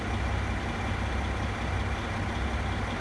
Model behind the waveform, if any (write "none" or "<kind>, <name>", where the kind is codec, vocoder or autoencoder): none